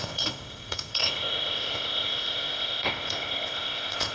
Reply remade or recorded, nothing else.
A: remade